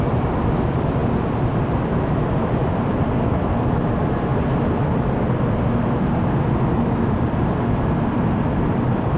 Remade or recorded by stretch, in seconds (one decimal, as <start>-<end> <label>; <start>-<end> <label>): 0.0-4.3 remade; 4.3-7.0 recorded; 7.0-9.2 remade